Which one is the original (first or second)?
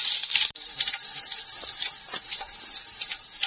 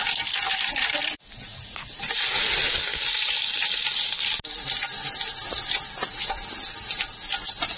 second